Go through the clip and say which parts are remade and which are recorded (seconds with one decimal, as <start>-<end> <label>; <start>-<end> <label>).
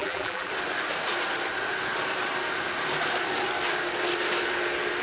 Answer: 0.0-0.5 remade; 0.5-5.0 recorded